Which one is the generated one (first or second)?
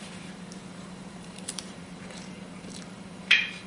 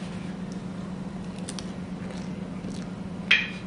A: first